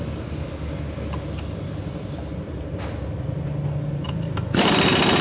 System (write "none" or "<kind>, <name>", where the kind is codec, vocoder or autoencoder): none